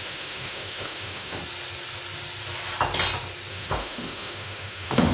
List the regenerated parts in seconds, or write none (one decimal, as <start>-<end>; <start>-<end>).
0.0-1.4; 3.5-5.1